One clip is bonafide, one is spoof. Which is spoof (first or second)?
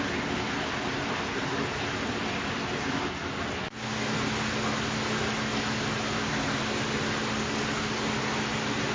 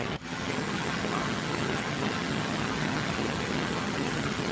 second